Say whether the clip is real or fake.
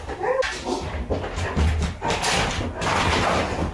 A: real